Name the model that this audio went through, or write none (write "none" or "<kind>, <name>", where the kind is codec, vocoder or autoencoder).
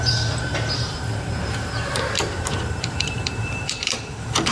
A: vocoder, BigVGAN v2